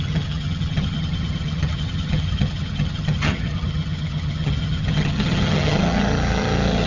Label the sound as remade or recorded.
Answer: remade